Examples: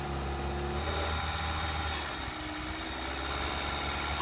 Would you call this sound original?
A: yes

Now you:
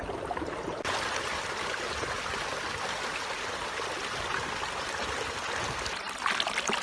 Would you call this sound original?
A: yes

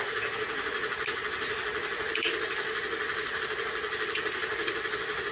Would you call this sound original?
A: yes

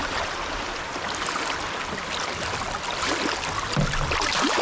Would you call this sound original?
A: yes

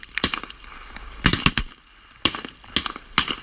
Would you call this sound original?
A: yes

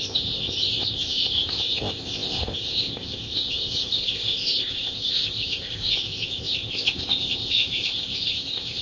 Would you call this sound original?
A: no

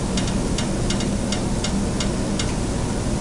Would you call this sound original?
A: yes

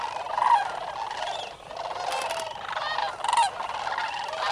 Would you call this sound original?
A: yes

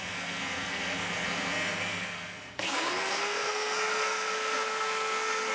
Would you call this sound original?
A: no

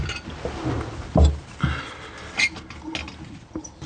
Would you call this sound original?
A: yes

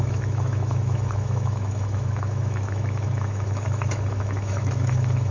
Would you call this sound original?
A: no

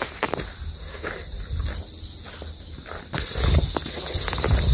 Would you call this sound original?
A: yes